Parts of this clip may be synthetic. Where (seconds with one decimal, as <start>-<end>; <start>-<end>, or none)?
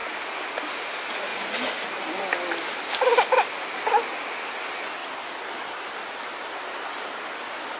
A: none